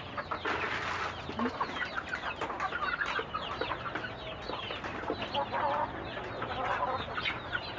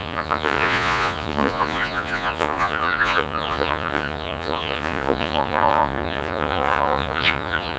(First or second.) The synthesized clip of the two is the second